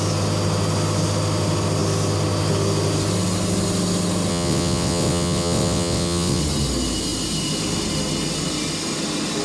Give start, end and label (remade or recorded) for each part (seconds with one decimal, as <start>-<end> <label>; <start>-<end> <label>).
0.0-4.3 recorded; 4.3-6.4 remade; 6.4-9.4 recorded